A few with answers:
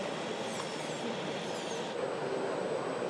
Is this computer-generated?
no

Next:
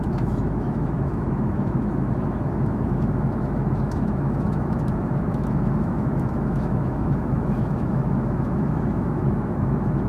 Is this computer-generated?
yes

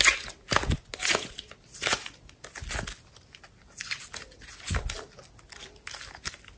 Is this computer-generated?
no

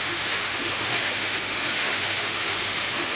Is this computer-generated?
yes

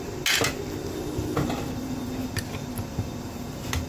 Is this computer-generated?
no